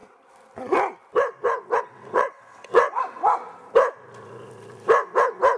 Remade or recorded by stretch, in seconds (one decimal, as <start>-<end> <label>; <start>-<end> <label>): 0.0-1.8 recorded; 1.8-3.4 remade; 3.4-5.6 recorded